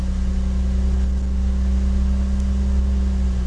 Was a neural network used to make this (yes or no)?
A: no